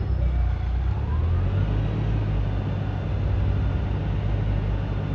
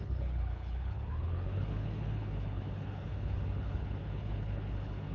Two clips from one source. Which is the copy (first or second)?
second